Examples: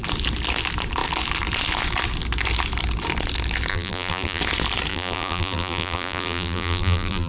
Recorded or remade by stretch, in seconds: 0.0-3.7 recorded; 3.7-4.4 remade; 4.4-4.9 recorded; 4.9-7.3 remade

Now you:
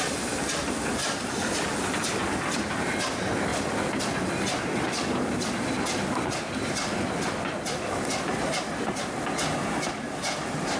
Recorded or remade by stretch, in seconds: 0.0-1.0 recorded; 1.0-2.2 remade; 2.2-3.5 recorded; 3.5-8.6 remade; 8.6-10.8 recorded